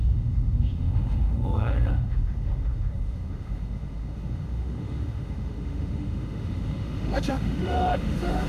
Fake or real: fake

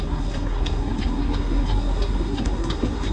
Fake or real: fake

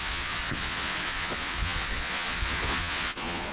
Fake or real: fake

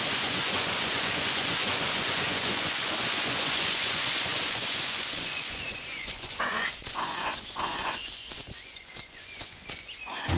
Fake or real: fake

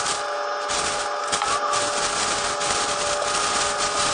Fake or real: real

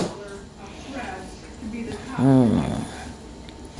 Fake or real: real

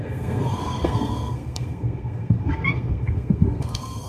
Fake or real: fake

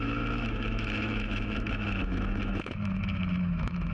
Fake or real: fake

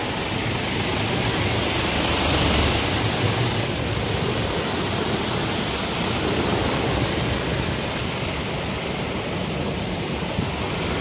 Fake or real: real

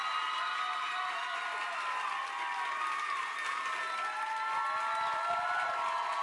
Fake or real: real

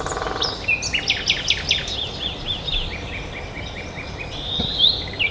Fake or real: real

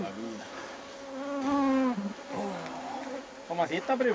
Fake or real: real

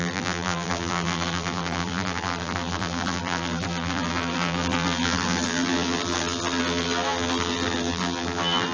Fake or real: fake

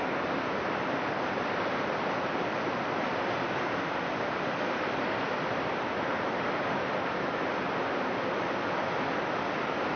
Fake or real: real